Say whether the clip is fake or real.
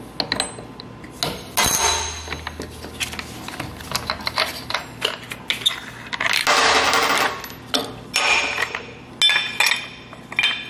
real